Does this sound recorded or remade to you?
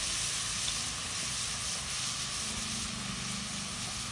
recorded